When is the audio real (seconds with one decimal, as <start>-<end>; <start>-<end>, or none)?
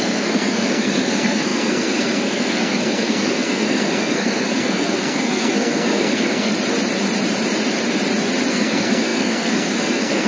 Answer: 6.5-8.5